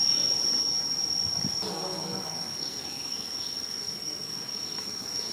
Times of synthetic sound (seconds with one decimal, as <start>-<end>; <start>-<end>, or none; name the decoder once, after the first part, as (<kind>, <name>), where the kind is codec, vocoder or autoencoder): 1.7-5.3 (codec, SNAC)